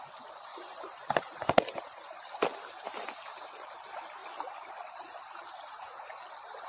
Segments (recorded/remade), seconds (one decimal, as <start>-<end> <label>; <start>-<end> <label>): 0.0-0.5 recorded; 0.5-2.3 remade; 2.3-6.7 recorded